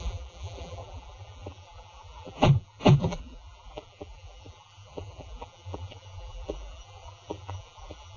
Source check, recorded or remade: remade